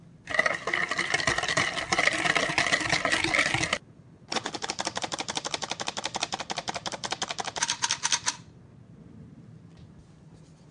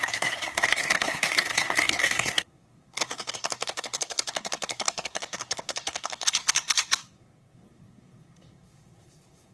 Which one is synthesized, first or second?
second